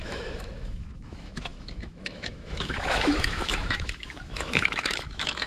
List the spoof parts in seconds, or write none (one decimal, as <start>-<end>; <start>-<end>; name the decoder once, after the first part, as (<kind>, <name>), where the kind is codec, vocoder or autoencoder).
0.0-5.5 (autoencoder, DAC-VAE)